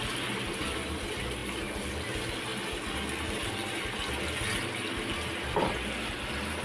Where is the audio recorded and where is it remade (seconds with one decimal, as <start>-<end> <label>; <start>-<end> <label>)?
0.0-1.4 remade; 1.4-1.9 recorded; 1.9-2.5 remade; 2.5-6.6 recorded